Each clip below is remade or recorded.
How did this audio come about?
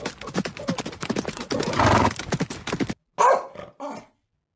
recorded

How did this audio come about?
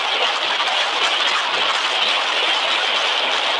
recorded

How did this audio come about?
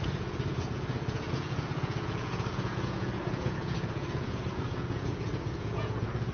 remade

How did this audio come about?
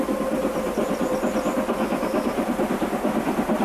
recorded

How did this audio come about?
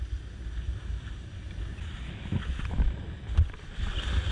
recorded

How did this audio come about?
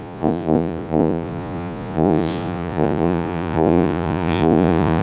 remade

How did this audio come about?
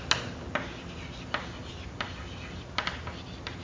recorded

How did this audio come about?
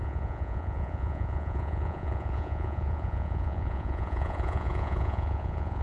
remade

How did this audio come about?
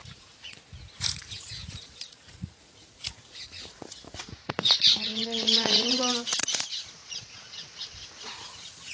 remade